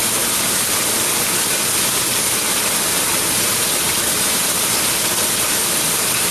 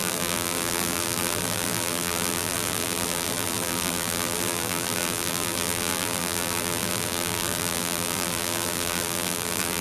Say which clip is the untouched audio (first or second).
first